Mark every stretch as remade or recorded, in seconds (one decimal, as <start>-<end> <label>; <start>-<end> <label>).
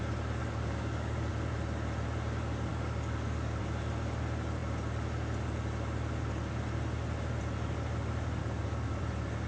0.0-0.4 recorded; 0.4-1.3 remade; 1.3-2.7 recorded; 2.7-3.6 remade; 3.6-8.4 recorded; 8.4-9.0 remade; 9.0-9.5 recorded